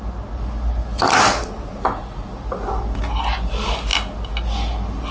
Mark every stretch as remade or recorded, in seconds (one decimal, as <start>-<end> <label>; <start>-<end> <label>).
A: 0.0-5.1 recorded